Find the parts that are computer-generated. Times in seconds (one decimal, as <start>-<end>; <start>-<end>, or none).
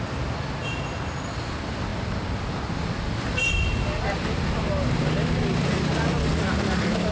none